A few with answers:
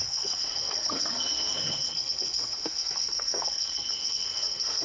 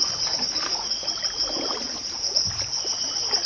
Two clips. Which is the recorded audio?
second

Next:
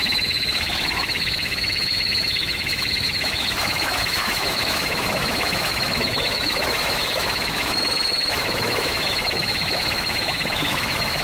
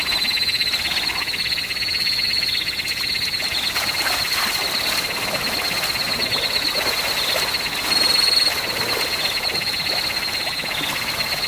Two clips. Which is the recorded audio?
second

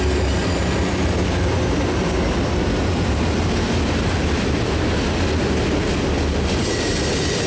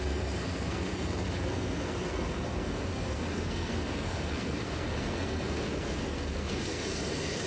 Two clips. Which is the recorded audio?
first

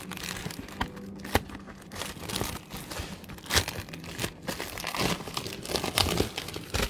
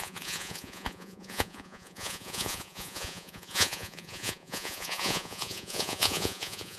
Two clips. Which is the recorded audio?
first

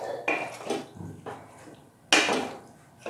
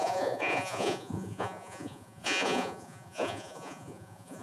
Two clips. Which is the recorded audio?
first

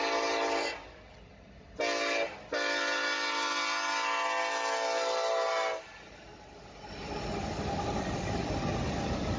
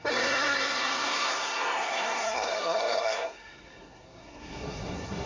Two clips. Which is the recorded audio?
first